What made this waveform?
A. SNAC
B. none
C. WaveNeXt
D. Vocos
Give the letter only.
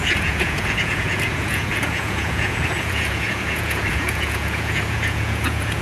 D